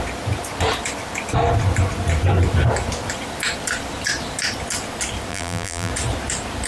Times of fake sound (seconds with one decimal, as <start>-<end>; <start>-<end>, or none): 5.3-5.9